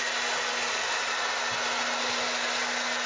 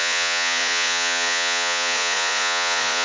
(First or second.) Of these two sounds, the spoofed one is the second